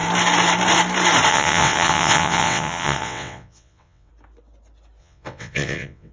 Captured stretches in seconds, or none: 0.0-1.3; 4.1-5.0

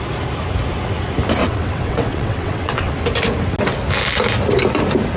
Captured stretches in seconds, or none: 0.0-1.4; 2.9-5.2

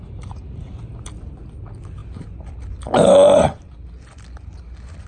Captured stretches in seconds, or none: 0.0-5.1

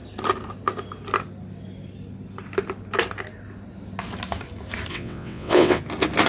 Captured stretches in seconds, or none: 0.0-4.9; 5.8-6.3

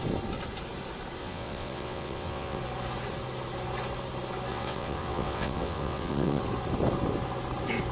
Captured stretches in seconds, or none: 0.0-1.2; 2.6-4.5; 6.4-7.9

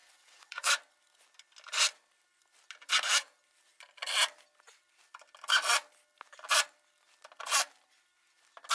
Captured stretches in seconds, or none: 0.7-8.7

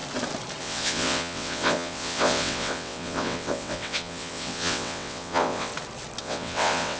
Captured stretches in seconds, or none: 0.0-0.6; 5.7-6.2

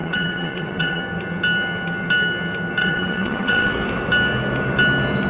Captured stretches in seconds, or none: 1.0-2.8; 3.7-5.3